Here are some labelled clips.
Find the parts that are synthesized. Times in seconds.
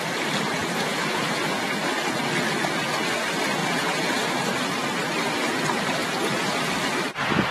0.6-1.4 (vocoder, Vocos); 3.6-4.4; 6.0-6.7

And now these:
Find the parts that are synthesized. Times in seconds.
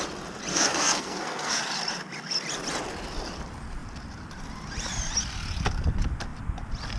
0.5-1.6 (codec, SNAC)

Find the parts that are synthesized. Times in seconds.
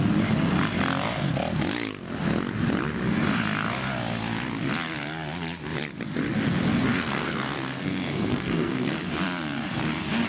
6.9-9.0 (codec, SNAC)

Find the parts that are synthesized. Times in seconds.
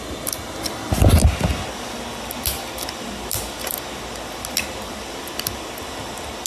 none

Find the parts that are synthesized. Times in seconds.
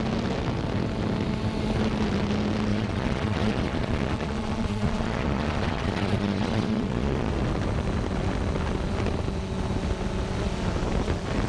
2.7-7.3 (vocoder, Vocos)